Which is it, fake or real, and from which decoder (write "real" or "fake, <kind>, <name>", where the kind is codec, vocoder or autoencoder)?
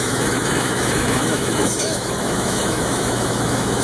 fake, autoencoder, DAC-VAE